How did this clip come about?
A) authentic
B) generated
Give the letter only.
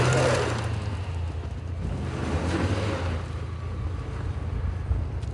A